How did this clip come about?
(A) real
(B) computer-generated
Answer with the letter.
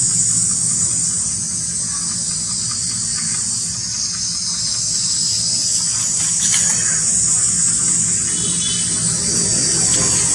A